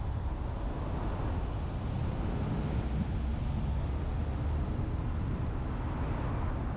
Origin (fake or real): real